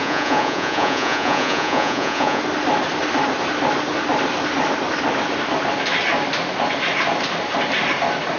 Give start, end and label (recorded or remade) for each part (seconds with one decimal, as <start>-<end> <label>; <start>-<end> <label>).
0.0-2.4 remade; 2.4-8.4 recorded